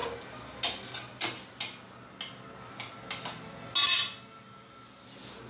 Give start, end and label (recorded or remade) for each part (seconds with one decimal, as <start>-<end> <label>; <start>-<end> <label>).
0.0-5.5 recorded